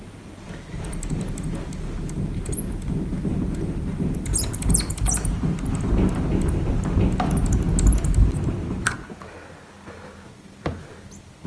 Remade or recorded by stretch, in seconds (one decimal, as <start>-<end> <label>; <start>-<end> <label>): 0.0-11.5 recorded